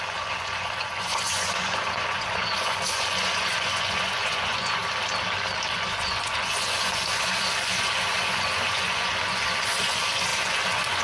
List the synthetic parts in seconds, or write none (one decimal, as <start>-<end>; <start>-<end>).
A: 0.0-4.8; 5.7-11.0

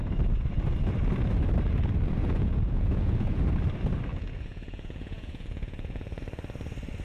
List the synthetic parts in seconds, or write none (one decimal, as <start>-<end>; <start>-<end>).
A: 2.2-3.4; 4.1-6.2